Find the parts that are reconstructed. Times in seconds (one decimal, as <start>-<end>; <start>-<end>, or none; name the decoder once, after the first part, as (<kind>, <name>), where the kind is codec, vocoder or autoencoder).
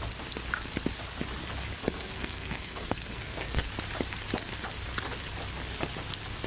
1.8-3.7 (codec, SNAC)